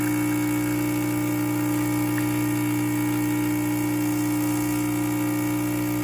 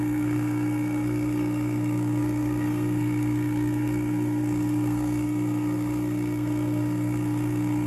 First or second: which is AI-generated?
second